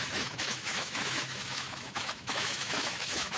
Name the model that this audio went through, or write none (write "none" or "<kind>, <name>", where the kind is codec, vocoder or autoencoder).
autoencoder, DAC-VAE